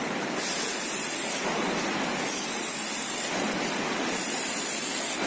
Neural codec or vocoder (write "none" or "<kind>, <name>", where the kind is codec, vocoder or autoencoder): none